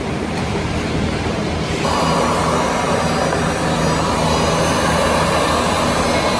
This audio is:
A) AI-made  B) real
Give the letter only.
B